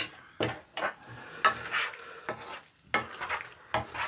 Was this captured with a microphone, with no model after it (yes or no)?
yes